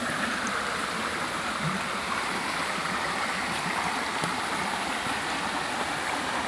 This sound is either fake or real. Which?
real